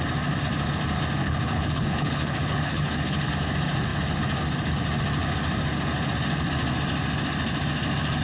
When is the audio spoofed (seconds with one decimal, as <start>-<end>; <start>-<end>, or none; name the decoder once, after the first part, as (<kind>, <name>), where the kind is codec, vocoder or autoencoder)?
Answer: 1.2-3.3 (codec, HILCodec)